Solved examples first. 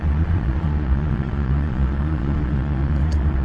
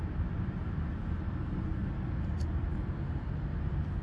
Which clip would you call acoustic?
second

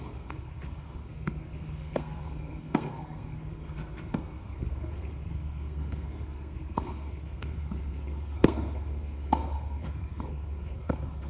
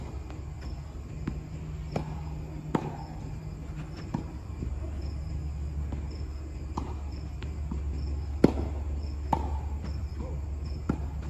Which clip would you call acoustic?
second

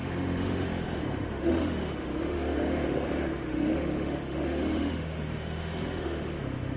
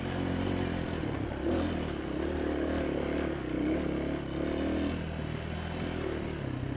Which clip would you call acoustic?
second